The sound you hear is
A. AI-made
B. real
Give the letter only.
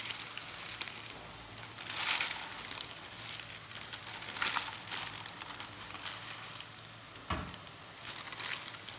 B